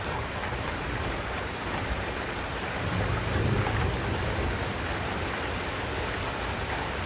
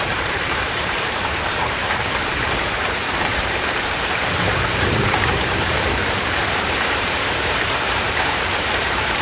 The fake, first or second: second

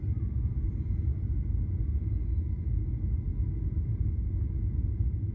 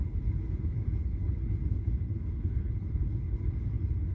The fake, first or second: second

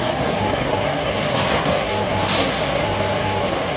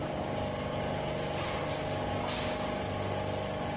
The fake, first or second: first